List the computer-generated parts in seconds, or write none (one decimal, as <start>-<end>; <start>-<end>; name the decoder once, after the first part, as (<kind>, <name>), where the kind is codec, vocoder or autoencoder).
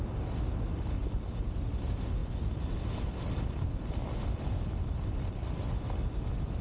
2.2-5.3 (vocoder, BigVGAN v2)